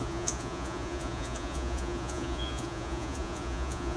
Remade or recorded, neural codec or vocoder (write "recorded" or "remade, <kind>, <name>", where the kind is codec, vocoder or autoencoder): remade, vocoder, Vocos